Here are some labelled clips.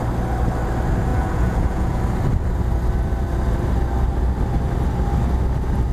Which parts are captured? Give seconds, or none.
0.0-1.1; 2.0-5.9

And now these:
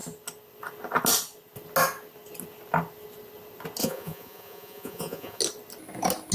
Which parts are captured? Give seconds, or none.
0.0-3.8; 5.4-6.3

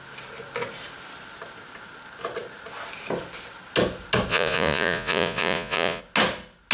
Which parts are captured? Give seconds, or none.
0.0-4.3; 6.0-6.7

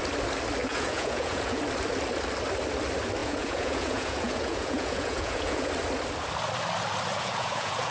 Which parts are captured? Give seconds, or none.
0.0-0.6; 1.6-3.2; 5.7-7.1